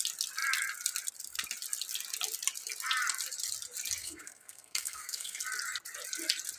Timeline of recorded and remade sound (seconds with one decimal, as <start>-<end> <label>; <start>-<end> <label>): 0.0-4.0 recorded; 4.0-5.4 remade; 5.4-6.6 recorded